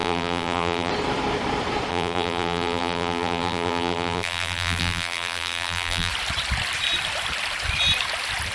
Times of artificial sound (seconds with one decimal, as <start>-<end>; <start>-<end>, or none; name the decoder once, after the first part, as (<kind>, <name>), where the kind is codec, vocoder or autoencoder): 0.0-0.9 (vocoder, BigVGAN v2); 1.9-6.1